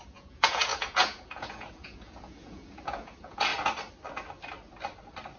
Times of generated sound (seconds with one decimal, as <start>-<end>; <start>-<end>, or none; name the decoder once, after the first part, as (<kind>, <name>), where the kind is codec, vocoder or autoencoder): 0.0-3.5 (vocoder, Vocos)